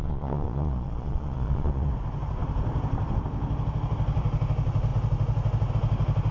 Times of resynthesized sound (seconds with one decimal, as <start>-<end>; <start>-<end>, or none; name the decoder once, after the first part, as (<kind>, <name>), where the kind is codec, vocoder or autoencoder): 0.0-1.9 (vocoder, Vocos)